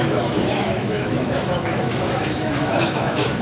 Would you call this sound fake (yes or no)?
yes